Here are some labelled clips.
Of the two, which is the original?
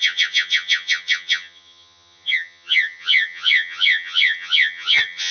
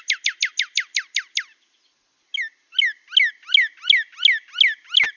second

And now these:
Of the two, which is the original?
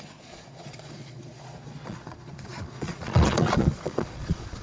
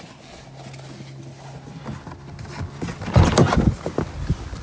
second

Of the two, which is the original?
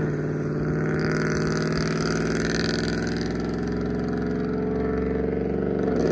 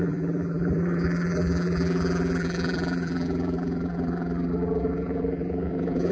first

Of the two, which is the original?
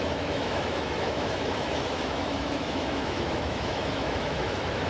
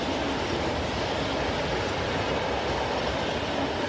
second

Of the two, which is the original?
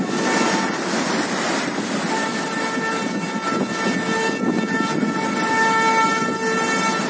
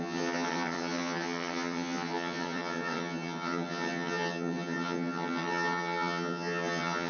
first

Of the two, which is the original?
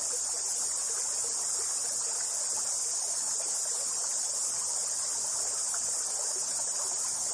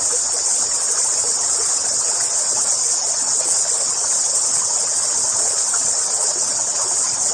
first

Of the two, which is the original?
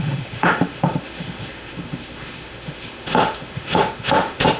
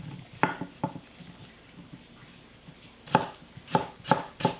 second